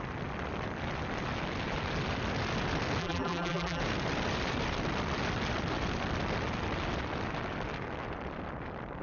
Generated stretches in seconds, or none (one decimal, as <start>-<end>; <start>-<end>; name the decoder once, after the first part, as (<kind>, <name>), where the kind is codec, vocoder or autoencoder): 3.0-3.8 (vocoder, BigVGAN v2)